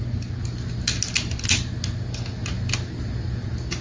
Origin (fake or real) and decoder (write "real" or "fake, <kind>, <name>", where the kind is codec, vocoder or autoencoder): real